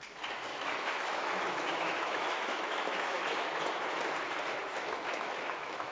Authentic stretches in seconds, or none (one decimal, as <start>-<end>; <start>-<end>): 0.0-0.5; 4.0-4.7